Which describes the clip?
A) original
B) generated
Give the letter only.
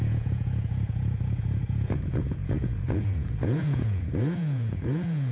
B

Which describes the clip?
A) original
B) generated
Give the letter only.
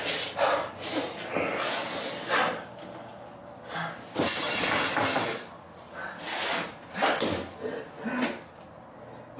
A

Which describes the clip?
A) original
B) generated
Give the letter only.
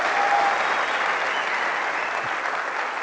A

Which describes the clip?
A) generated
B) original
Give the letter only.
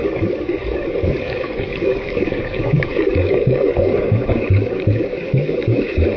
A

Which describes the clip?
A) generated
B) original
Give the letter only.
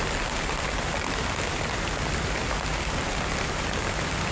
B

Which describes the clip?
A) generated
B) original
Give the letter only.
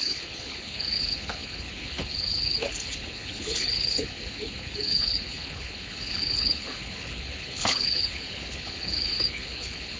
A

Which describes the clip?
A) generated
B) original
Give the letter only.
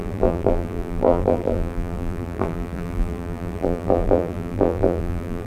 A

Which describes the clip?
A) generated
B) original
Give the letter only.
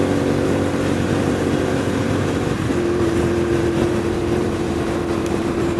A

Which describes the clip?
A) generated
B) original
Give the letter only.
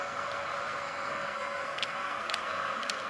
A